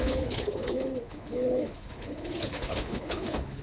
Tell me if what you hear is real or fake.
fake